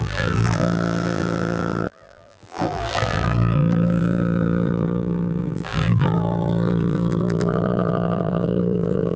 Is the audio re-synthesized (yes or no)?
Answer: yes